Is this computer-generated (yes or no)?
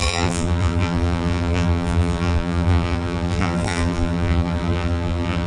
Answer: yes